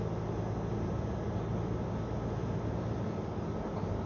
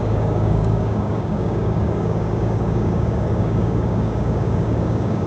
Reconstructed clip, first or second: second